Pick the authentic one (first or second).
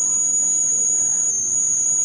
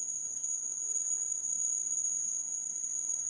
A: first